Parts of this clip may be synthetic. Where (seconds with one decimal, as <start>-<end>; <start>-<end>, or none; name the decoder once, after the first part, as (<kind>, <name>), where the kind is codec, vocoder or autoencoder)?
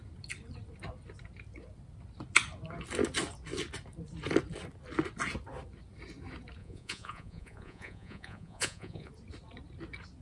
6.6-9.1 (vocoder, Vocos)